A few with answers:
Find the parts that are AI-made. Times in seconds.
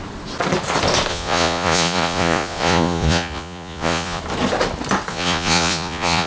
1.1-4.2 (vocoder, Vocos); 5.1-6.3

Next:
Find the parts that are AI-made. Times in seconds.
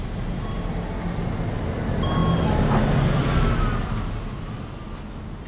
none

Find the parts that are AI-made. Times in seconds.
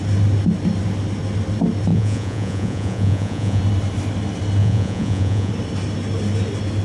1.9-3.6 (vocoder, Vocos); 4.6-5.5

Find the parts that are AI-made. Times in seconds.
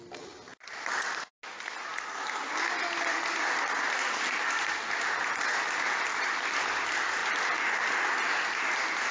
none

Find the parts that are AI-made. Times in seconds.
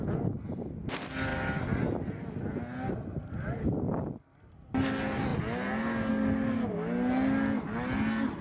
none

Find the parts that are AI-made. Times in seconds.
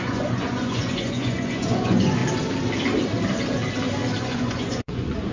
0.0-2.2 (vocoder, Vocos); 4.2-5.3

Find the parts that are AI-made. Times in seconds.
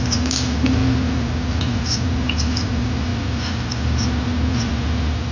none